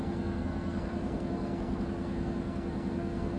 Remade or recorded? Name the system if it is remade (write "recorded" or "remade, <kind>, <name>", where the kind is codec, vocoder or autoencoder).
remade, codec, SNAC